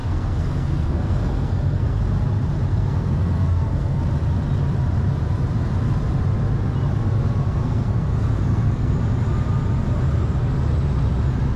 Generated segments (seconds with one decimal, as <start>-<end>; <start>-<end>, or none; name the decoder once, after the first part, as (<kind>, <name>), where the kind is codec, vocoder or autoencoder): 0.0-2.0 (codec, SNAC); 2.7-4.0; 7.4-8.9